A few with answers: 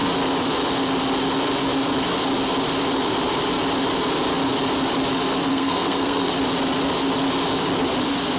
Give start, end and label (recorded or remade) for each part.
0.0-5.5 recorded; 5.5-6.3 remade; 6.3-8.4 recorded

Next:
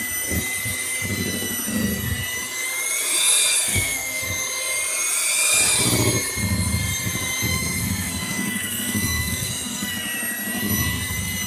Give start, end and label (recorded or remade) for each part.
0.0-3.7 recorded; 3.7-4.2 remade; 4.2-7.5 recorded; 7.5-9.9 remade; 9.9-11.5 recorded

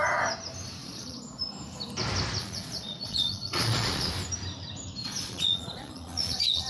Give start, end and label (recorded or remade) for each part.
0.0-0.8 recorded; 0.8-1.4 remade; 1.4-2.4 recorded; 2.4-4.1 remade; 4.1-5.0 recorded; 5.0-6.7 remade

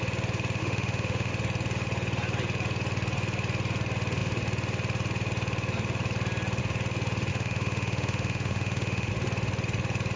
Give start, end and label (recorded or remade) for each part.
0.0-0.6 recorded; 0.6-1.3 remade; 1.3-7.3 recorded; 7.3-9.1 remade; 9.1-10.2 recorded

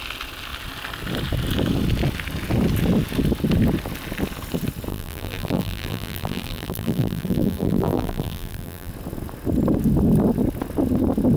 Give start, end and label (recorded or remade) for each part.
0.0-4.9 recorded; 4.9-8.9 remade; 8.9-11.4 recorded